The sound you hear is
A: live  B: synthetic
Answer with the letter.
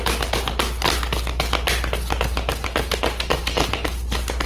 A